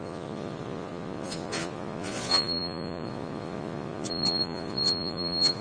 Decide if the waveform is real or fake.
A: fake